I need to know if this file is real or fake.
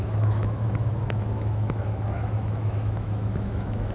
fake